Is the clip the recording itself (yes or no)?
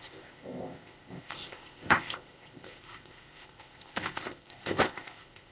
no